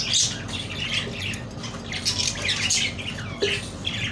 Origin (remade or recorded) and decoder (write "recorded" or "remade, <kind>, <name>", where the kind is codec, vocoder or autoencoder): recorded